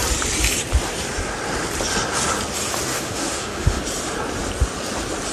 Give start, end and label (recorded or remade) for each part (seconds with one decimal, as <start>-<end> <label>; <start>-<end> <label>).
0.0-2.9 recorded; 2.9-3.8 remade; 3.8-5.3 recorded